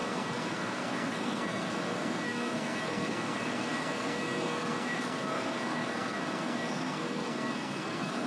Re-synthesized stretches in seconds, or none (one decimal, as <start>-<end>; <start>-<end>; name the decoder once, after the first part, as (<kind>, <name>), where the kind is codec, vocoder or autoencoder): 0.0-8.3 (codec, SNAC)